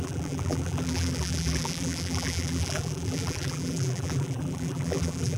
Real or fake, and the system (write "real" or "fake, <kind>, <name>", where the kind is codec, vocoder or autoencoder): fake, vocoder, BigVGAN v2